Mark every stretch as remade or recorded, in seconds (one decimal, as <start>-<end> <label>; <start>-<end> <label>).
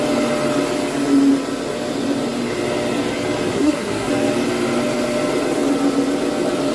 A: 0.0-3.5 recorded; 3.5-4.1 remade; 4.1-6.7 recorded